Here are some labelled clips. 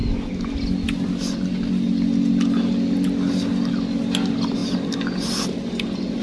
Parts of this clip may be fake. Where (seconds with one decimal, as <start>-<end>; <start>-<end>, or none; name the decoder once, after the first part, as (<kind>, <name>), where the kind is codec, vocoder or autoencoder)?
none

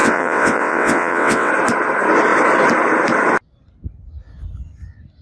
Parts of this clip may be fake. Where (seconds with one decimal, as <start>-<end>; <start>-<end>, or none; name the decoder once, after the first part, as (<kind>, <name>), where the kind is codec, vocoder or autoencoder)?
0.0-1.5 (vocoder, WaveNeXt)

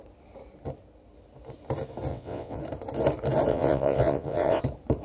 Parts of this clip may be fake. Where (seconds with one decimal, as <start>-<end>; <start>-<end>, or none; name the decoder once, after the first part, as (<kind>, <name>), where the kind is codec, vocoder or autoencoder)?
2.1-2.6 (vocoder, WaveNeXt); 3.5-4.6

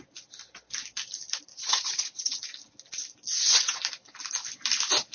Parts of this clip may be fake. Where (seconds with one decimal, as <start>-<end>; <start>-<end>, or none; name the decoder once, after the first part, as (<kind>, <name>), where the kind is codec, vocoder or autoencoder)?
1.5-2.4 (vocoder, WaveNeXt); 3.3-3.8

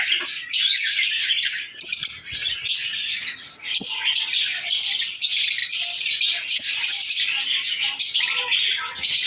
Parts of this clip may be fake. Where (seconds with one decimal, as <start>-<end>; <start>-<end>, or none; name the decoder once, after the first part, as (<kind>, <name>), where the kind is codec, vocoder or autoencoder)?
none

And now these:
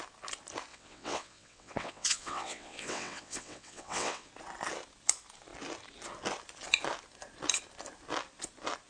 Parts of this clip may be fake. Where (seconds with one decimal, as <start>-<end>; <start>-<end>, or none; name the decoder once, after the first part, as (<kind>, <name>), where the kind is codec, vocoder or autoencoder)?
0.7-4.3 (vocoder, WaveNeXt)

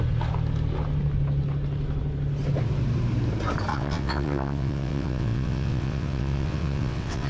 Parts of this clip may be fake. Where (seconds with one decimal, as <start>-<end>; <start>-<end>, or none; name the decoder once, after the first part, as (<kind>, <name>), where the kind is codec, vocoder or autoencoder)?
3.7-7.3 (vocoder, WaveNeXt)